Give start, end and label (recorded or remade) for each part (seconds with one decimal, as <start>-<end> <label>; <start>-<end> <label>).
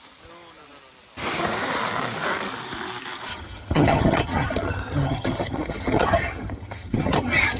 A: 0.0-3.3 recorded; 3.3-7.6 remade